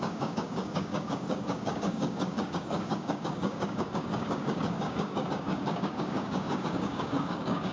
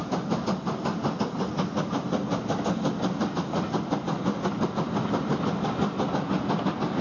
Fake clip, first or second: first